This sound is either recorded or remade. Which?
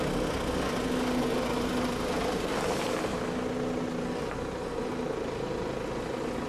recorded